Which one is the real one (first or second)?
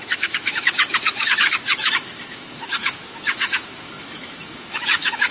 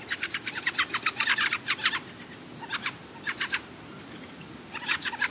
second